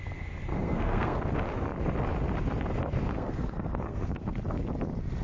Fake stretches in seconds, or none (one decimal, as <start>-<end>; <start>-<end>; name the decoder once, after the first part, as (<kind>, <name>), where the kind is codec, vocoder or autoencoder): 0.5-1.2 (codec, SNAC); 3.1-4.4